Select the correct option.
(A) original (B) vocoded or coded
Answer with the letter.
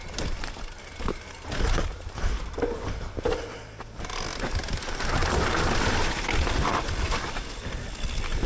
A